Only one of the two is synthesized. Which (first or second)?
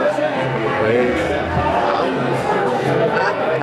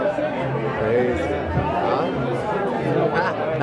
first